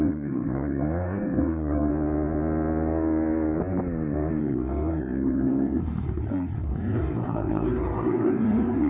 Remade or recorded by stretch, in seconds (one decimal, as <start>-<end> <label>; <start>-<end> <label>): 0.0-1.9 remade; 1.9-4.4 recorded; 4.4-8.9 remade